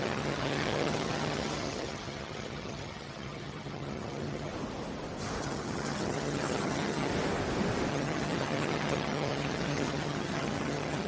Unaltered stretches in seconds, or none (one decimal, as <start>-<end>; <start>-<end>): 4.5-5.4; 7.1-7.9